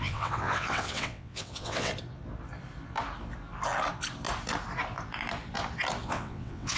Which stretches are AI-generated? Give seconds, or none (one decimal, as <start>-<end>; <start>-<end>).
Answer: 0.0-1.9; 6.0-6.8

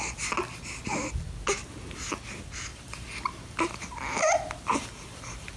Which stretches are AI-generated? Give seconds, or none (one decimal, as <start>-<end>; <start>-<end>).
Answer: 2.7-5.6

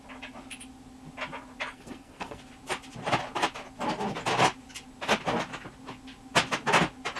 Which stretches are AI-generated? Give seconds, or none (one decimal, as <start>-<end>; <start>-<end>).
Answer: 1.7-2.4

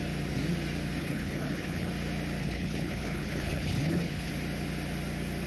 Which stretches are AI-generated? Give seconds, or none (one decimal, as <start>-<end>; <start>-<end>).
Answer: 1.0-1.9; 2.4-4.3

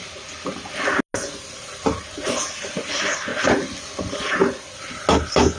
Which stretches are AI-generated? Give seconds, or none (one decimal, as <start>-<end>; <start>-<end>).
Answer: none

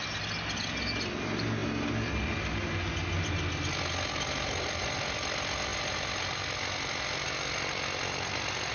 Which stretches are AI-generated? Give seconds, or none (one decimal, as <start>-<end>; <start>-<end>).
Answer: none

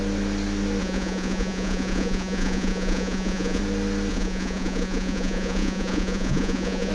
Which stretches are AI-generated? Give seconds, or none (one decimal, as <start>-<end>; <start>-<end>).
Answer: 0.8-3.6; 4.1-6.9